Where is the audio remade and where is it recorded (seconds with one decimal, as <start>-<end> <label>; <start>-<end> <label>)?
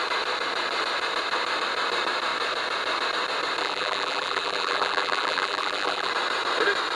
0.0-3.6 recorded; 3.6-6.1 remade; 6.1-7.0 recorded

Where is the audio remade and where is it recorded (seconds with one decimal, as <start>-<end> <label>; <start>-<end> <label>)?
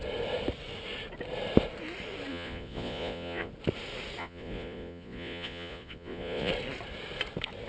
0.0-2.3 recorded; 2.3-3.5 remade; 3.5-4.2 recorded; 4.2-6.5 remade; 6.5-7.7 recorded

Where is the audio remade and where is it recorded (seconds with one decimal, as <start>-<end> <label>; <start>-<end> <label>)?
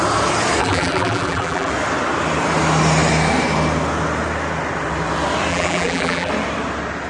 0.0-0.6 recorded; 0.6-1.7 remade; 1.7-5.5 recorded; 5.5-6.3 remade; 6.3-7.1 recorded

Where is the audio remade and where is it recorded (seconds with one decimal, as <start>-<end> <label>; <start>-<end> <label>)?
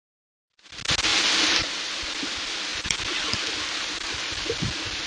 0.0-5.1 recorded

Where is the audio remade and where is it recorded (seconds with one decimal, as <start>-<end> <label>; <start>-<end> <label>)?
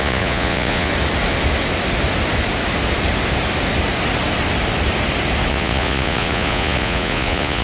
0.0-0.9 remade; 0.9-5.5 recorded; 5.5-7.6 remade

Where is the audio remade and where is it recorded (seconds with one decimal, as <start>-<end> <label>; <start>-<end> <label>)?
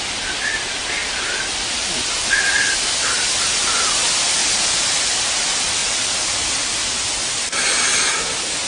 0.0-8.7 recorded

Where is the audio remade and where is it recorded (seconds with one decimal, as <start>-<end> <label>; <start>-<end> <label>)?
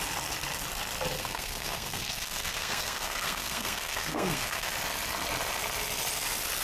0.0-1.2 recorded; 1.2-4.7 remade; 4.7-6.6 recorded